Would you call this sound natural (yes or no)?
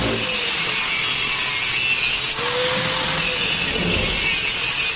yes